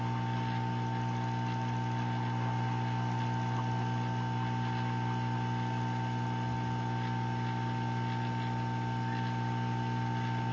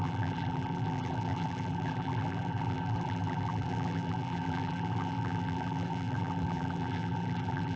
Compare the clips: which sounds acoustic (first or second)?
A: first